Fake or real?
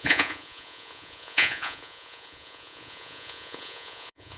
fake